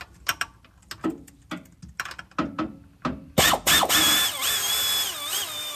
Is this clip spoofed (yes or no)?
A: no